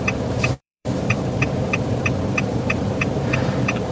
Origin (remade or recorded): remade